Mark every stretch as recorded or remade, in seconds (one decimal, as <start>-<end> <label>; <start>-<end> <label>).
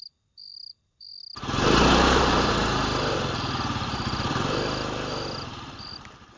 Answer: 0.0-1.1 remade; 1.1-2.2 recorded; 2.2-6.4 remade